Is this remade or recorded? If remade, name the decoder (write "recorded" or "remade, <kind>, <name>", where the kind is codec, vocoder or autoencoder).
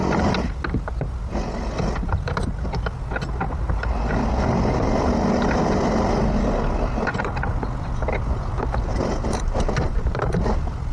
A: recorded